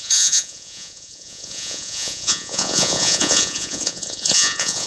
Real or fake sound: fake